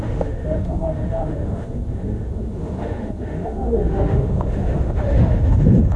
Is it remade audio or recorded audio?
remade